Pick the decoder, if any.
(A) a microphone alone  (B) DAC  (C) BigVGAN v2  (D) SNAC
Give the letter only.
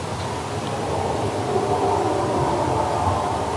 A